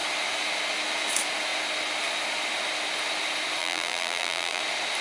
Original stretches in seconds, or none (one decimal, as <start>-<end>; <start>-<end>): 0.0-3.6; 4.6-5.0